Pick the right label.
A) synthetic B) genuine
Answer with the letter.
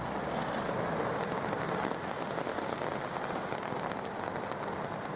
B